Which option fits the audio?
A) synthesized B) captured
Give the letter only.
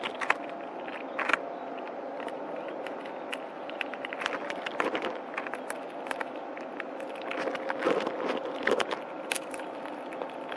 B